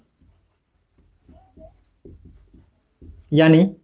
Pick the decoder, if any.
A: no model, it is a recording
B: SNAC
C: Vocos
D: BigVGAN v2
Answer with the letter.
D